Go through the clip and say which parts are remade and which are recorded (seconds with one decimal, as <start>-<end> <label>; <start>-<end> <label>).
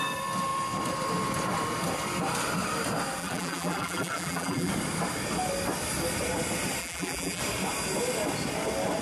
0.0-3.2 recorded; 3.2-4.7 remade; 4.7-6.8 recorded; 6.8-7.4 remade; 7.4-9.0 recorded